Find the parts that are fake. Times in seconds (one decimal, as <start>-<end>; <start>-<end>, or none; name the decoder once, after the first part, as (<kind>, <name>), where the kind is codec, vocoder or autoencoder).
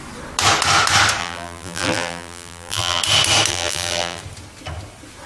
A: 1.2-3.0 (vocoder, BigVGAN v2); 3.5-4.2